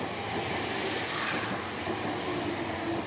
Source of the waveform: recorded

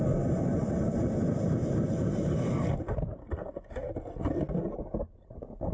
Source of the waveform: recorded